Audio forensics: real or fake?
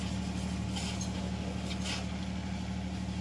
real